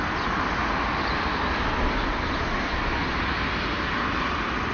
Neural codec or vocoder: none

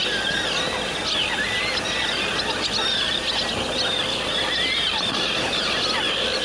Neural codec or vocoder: none